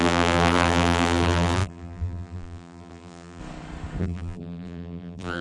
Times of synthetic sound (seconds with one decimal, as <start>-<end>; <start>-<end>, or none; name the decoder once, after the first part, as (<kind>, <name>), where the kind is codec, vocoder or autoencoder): 0.0-3.4 (vocoder, BigVGAN v2); 4.0-5.4